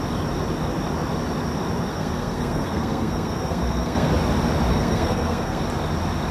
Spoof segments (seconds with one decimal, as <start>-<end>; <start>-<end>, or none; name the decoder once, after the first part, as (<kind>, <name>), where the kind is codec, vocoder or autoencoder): 1.9-4.1 (codec, SNAC); 4.7-5.6